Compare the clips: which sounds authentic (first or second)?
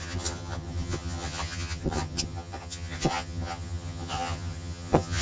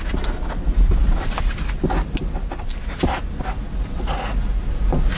second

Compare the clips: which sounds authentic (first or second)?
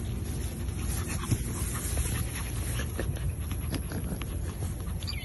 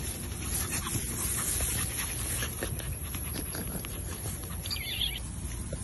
first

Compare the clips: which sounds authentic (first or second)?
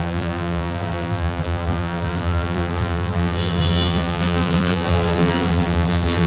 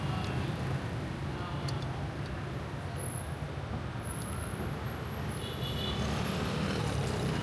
second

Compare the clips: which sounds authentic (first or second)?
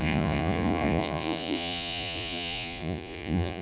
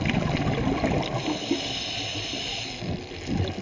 second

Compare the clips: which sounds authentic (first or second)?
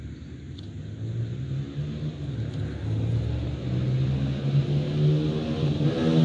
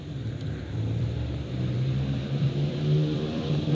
first